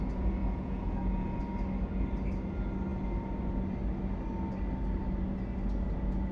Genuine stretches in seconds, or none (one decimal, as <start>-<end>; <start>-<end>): 0.0-0.4; 1.4-6.3